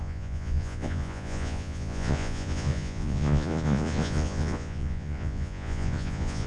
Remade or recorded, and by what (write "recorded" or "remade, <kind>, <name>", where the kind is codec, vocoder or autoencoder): remade, vocoder, Vocos